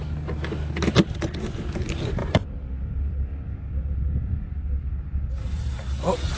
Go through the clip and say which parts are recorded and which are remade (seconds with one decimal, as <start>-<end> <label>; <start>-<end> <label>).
0.0-2.2 recorded; 2.2-5.7 remade; 5.7-6.4 recorded

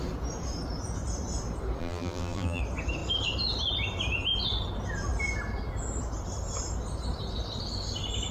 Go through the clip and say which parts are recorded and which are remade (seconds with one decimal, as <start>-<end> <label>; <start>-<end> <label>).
0.0-1.8 recorded; 1.8-2.6 remade; 2.6-8.3 recorded

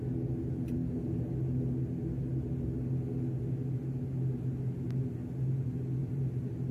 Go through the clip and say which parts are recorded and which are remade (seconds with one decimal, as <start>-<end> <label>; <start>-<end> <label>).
0.0-6.0 recorded; 6.0-6.7 remade

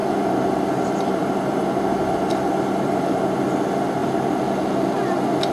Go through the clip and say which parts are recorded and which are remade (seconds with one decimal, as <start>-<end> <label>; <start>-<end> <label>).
0.0-3.2 remade; 3.2-5.5 recorded

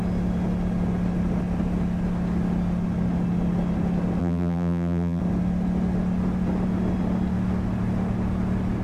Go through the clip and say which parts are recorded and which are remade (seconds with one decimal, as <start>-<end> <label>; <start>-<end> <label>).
0.0-4.2 recorded; 4.2-5.2 remade; 5.2-8.8 recorded

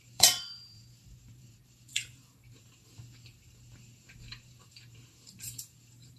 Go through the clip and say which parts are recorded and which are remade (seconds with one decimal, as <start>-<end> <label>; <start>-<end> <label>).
0.0-6.2 remade

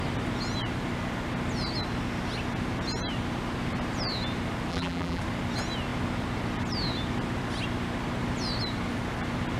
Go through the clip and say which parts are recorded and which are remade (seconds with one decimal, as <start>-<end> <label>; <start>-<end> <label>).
0.0-4.7 recorded; 4.7-5.2 remade; 5.2-9.6 recorded